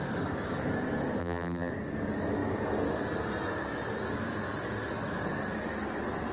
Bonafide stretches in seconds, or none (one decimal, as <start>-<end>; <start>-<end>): 0.0-1.2; 1.7-6.3